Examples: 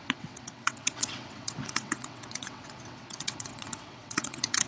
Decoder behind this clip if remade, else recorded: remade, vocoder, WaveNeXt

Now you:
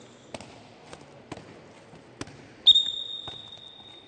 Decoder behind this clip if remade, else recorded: recorded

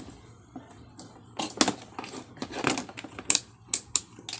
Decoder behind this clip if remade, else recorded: recorded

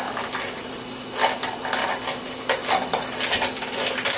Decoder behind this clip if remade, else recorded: recorded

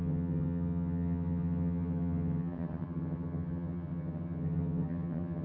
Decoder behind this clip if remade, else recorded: remade, vocoder, HiFi-GAN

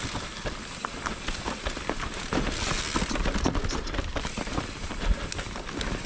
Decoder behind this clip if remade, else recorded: recorded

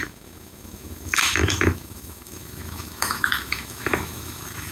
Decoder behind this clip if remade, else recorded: remade, autoencoder, DAC-VAE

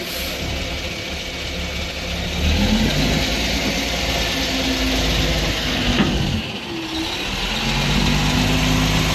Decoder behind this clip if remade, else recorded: recorded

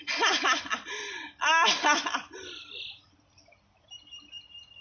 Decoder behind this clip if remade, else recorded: recorded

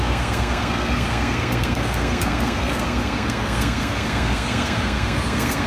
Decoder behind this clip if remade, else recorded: remade, codec, SNAC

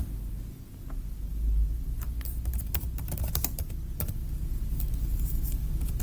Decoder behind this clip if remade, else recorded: recorded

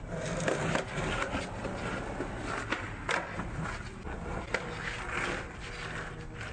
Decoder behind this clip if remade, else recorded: recorded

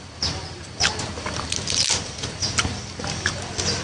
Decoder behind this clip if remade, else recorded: recorded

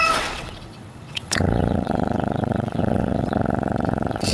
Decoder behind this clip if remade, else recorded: remade, vocoder, WaveNeXt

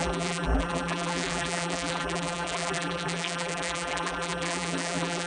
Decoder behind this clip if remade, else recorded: remade, vocoder, BigVGAN v2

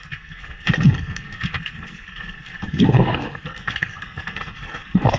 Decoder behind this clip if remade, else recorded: remade, codec, SNAC